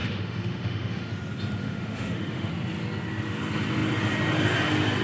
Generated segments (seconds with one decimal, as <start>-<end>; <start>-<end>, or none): 0.0-1.1; 1.6-2.5